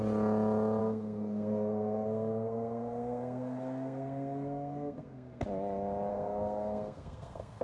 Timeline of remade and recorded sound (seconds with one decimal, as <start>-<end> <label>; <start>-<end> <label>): 0.0-0.8 recorded; 0.8-5.4 remade; 5.4-6.1 recorded; 6.1-7.6 remade